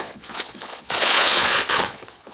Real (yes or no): no